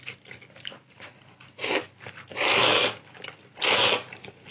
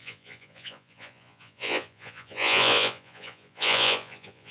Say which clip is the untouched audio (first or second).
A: first